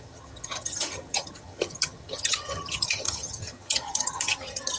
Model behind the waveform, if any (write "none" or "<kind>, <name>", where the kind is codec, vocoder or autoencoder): vocoder, HiFi-GAN